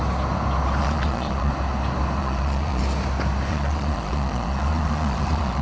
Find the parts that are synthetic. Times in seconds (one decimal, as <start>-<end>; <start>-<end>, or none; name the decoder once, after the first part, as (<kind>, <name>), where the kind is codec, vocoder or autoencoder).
0.8-1.5 (vocoder, Vocos); 2.2-2.8; 3.5-5.6